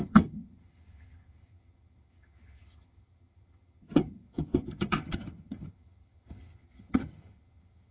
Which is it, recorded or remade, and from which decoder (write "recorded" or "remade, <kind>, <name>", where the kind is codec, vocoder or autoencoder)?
remade, vocoder, HiFi-GAN